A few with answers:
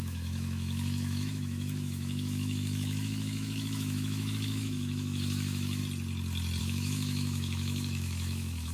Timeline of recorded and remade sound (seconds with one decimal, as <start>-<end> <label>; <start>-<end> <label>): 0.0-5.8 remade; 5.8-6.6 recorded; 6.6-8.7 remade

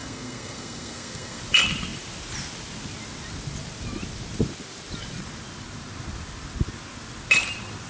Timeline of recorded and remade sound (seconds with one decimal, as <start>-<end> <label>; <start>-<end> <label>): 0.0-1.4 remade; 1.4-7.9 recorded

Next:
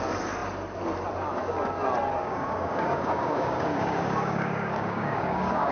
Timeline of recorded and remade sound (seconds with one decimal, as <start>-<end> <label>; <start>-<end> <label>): 0.0-2.2 recorded; 2.2-5.7 remade